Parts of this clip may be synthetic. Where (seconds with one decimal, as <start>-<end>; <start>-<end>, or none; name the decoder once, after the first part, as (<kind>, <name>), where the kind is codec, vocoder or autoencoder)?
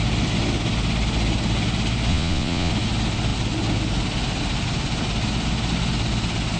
2.1-2.7 (vocoder, Vocos)